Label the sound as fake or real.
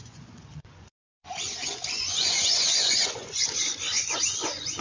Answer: fake